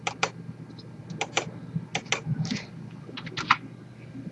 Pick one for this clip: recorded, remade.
recorded